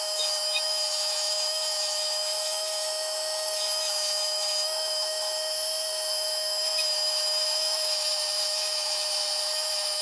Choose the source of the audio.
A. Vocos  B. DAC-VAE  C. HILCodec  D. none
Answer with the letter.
B